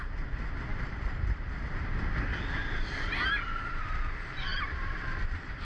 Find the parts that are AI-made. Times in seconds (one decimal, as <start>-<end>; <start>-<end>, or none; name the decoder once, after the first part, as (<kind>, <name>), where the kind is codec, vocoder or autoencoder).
0.7-1.5 (vocoder, BigVGAN v2); 4.5-5.6